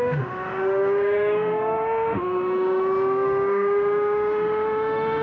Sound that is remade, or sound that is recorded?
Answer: remade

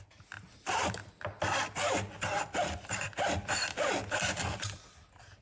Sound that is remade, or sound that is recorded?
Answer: recorded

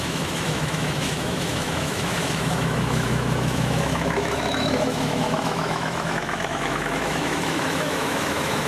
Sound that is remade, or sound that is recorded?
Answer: remade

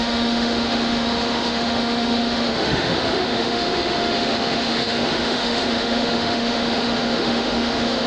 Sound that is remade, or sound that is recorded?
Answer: remade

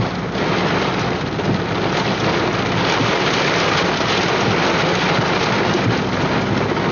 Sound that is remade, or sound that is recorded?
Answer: recorded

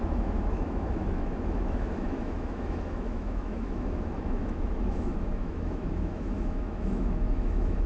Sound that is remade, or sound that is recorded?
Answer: remade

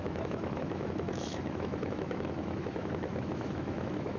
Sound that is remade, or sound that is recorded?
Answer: remade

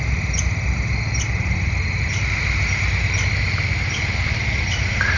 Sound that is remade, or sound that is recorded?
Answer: recorded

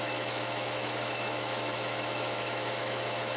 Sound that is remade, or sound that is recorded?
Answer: remade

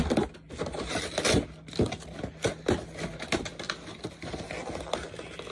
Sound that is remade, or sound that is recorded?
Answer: recorded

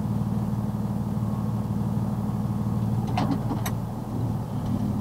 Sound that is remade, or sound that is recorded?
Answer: recorded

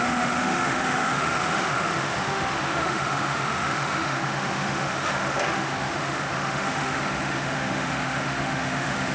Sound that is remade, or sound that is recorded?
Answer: remade